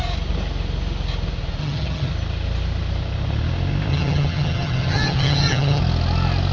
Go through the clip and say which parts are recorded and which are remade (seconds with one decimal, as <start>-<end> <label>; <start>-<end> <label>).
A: 0.0-1.6 recorded; 1.6-2.1 remade; 2.1-3.9 recorded; 3.9-5.8 remade; 5.8-6.5 recorded

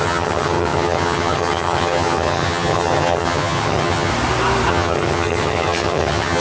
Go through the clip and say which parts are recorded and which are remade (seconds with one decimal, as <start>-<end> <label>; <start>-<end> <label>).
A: 0.0-4.1 remade; 4.1-4.7 recorded; 4.7-6.4 remade

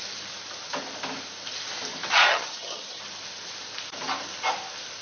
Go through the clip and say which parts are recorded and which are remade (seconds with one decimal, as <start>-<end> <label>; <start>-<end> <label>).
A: 0.0-2.3 recorded; 2.3-3.0 remade; 3.0-5.0 recorded